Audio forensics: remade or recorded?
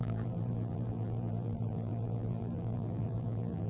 remade